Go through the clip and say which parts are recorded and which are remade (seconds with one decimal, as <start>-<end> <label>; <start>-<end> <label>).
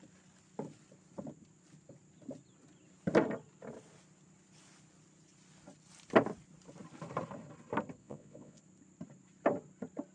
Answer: 0.0-8.0 recorded; 8.0-8.6 remade; 8.6-10.1 recorded